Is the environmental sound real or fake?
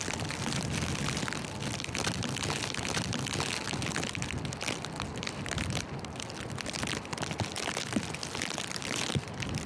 real